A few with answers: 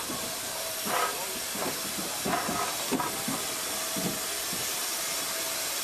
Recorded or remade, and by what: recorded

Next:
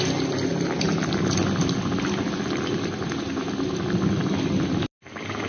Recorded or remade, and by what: recorded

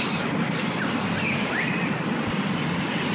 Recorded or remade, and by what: recorded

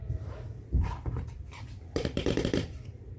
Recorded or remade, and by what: remade, vocoder, BigVGAN v2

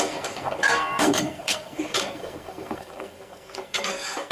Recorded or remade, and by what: remade, codec, SNAC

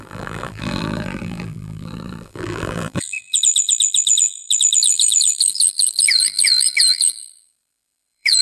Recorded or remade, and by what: remade, vocoder, BigVGAN v2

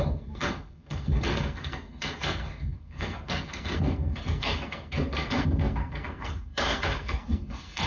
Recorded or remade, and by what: remade, codec, SNAC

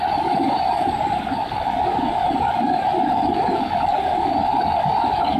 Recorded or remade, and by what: remade, codec, DAC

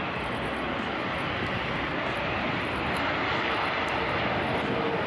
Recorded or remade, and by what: recorded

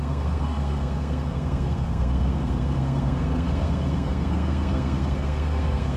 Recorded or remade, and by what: remade, codec, SNAC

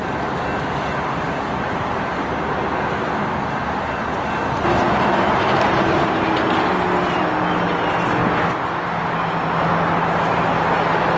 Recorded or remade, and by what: recorded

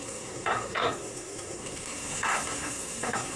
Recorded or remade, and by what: remade, codec, SNAC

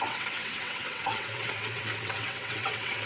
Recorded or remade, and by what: remade, vocoder, WaveNeXt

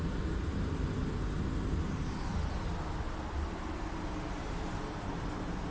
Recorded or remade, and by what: recorded